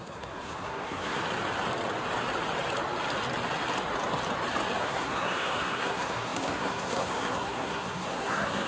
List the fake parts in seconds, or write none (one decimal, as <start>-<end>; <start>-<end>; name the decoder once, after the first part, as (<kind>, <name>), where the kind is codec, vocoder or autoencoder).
0.0-1.2 (codec, SNAC); 4.8-8.7